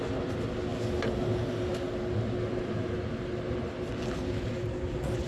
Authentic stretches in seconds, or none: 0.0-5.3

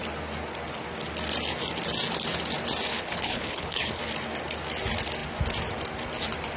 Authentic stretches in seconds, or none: 0.0-2.9; 4.0-6.6

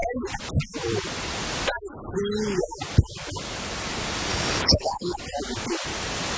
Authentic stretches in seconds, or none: 0.0-4.3; 5.2-6.4